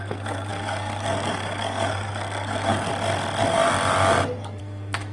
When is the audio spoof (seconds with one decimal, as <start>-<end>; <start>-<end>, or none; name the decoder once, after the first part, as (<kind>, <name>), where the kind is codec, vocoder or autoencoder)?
0.0-2.9 (codec, SNAC); 4.6-5.1